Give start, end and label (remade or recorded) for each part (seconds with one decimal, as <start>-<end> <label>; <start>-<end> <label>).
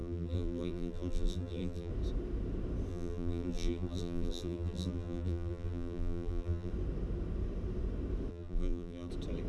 0.0-1.9 remade; 1.9-2.9 recorded; 2.9-6.7 remade; 6.7-8.3 recorded; 8.3-9.1 remade; 9.1-9.5 recorded